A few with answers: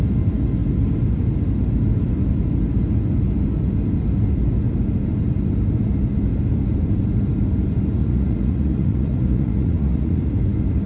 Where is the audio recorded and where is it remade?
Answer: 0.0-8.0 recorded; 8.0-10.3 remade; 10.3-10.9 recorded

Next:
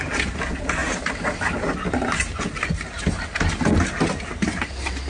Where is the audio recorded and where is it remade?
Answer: 0.0-5.1 recorded